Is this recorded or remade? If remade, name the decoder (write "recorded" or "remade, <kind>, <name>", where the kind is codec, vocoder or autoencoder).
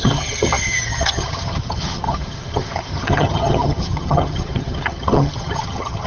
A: remade, vocoder, HiFi-GAN